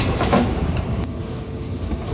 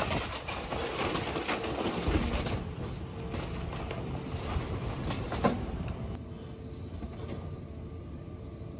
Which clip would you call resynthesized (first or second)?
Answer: first